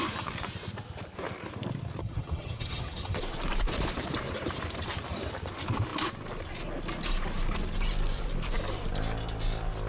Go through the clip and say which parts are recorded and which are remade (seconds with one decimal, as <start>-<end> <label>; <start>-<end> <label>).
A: 0.0-2.0 recorded; 2.0-3.2 remade; 3.2-9.9 recorded